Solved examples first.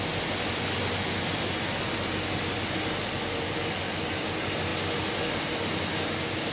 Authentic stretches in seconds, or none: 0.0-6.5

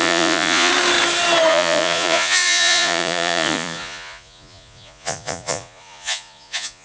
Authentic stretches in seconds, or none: 0.7-1.5

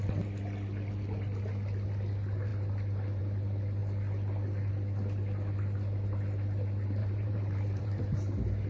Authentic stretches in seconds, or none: 0.0-7.0; 8.0-8.7